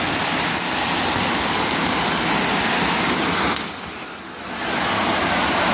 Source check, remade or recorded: recorded